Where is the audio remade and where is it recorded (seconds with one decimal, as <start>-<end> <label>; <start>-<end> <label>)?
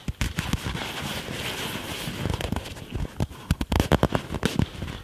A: 0.0-5.0 recorded